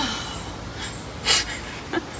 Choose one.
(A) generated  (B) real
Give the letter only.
B